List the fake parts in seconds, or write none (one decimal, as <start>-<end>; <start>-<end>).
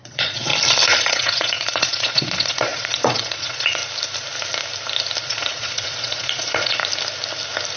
0.0-0.5; 1.0-3.8; 5.2-6.8